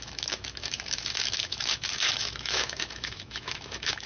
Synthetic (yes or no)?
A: yes